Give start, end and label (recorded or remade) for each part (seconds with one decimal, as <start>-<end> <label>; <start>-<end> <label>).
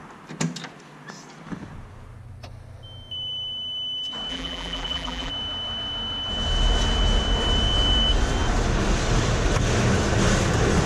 0.0-4.3 recorded; 4.3-5.3 remade; 5.3-10.9 recorded